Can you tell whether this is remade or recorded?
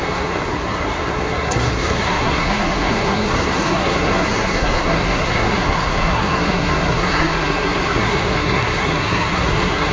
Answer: remade